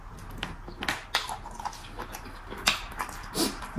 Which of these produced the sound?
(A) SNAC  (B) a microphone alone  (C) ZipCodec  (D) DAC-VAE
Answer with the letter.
B